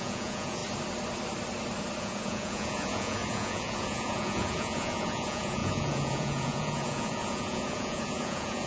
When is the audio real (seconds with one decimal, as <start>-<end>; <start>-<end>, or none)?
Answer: 0.6-2.0